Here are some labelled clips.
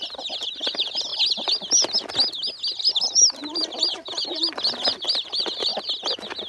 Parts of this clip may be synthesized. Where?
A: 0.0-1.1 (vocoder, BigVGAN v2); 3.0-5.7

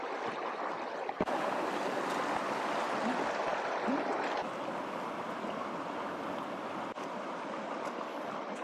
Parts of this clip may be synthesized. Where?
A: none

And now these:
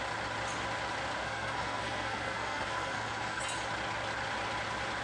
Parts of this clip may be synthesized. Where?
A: 1.2-3.4 (codec, SNAC)

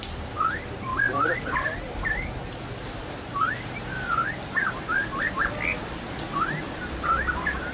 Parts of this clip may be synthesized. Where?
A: none

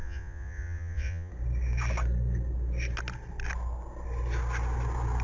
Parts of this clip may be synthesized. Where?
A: 0.0-1.3 (vocoder, Vocos)

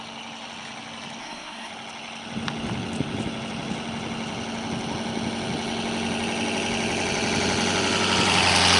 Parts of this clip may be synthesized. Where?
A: 1.2-1.7 (codec, SNAC)

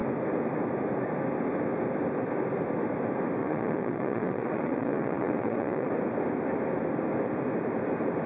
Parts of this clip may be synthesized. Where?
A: 3.4-5.9 (vocoder, Vocos)

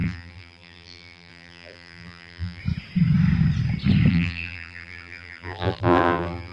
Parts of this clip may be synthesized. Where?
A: 0.0-2.6 (vocoder, BigVGAN v2); 4.1-6.5